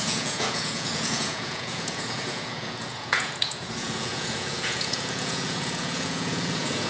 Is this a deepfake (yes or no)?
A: yes